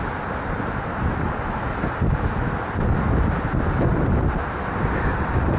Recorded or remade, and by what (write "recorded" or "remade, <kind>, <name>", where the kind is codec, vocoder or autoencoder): recorded